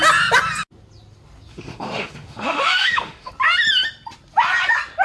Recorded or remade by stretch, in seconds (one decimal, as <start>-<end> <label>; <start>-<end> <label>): 0.0-1.5 recorded; 1.5-3.3 remade; 3.3-5.0 recorded